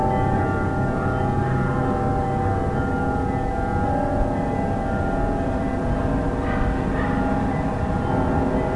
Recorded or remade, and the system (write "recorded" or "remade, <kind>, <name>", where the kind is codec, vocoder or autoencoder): recorded